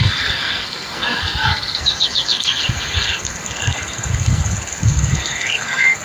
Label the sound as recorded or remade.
remade